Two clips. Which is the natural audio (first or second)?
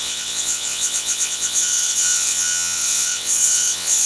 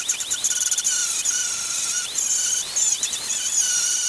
second